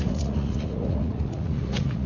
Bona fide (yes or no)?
no